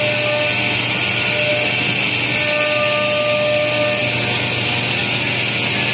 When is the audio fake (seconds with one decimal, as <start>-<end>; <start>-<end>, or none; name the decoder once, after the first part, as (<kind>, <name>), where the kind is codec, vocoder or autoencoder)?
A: none